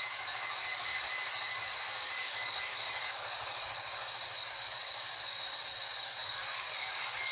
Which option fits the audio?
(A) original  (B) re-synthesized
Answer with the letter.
B